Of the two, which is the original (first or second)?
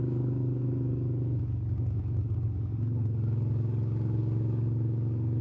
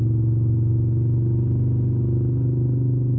second